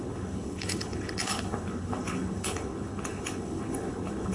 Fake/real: fake